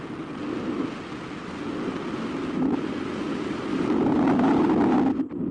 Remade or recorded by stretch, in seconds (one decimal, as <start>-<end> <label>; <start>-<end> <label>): 0.0-2.0 recorded; 2.0-5.5 remade